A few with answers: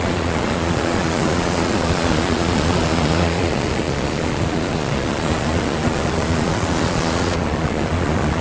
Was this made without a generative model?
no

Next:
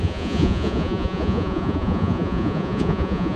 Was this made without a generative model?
no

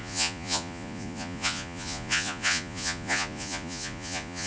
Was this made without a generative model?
no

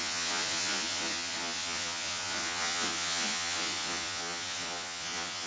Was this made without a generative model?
no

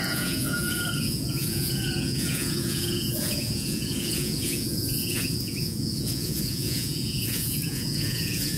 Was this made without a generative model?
no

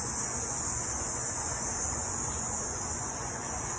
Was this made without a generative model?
no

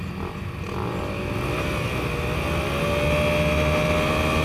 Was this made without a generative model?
yes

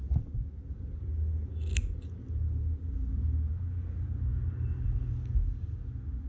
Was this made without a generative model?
yes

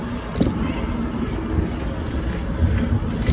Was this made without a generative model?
yes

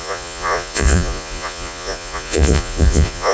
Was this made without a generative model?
no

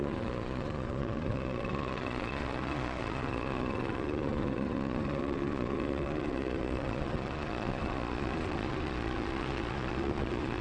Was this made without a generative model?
no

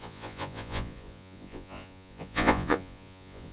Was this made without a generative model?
no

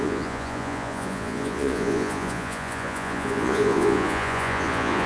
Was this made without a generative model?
no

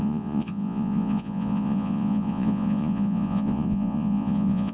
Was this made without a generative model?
no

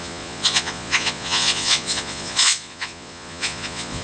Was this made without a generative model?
no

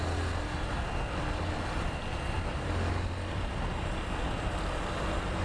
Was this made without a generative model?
yes